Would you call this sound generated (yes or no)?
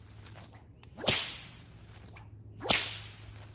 no